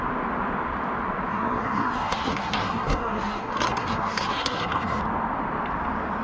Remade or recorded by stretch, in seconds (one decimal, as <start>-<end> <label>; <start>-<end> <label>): 0.0-1.3 recorded; 1.3-5.0 remade; 5.0-6.2 recorded